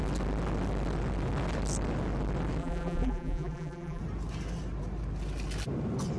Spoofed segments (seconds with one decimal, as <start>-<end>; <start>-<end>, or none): 2.6-4.0